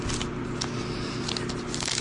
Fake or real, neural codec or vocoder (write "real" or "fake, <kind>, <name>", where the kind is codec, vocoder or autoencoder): real